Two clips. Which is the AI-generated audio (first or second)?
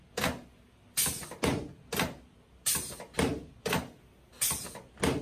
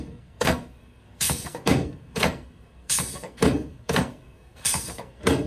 second